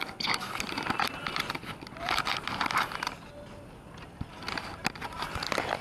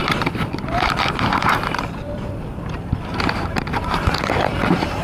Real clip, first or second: first